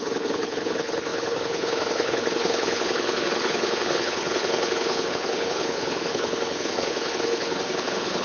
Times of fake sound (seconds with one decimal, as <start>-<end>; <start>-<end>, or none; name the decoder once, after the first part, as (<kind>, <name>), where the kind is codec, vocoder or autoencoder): 0.0-8.2 (codec, HILCodec)